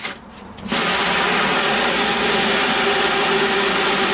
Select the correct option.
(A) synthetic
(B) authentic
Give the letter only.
B